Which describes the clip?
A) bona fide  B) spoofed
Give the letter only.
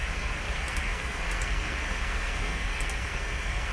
B